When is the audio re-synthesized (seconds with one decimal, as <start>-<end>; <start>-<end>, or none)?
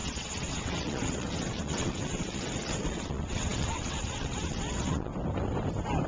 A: 0.0-5.1